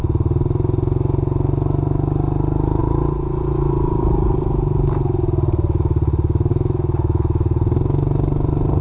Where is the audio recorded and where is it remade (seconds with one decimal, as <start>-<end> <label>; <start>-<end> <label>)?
0.0-6.5 recorded; 6.5-7.2 remade; 7.2-8.8 recorded